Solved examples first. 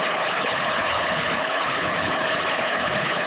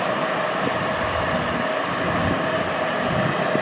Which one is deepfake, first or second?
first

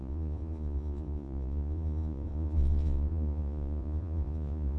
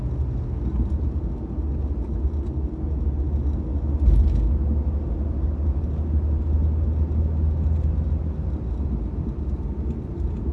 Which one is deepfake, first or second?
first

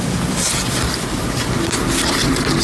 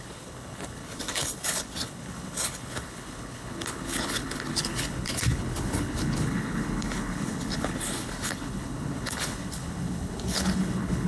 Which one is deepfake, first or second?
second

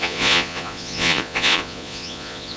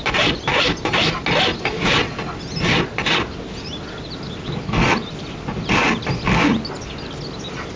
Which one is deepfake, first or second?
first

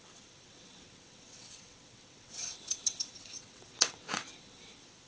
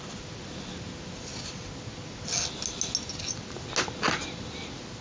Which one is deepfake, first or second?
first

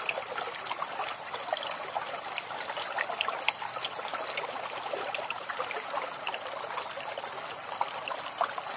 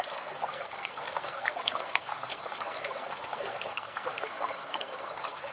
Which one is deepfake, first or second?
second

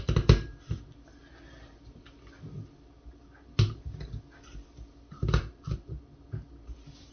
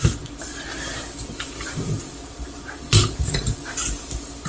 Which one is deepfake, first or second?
second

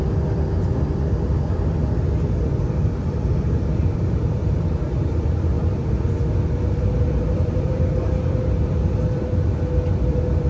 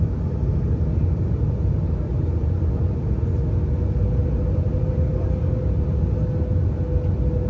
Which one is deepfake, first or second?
first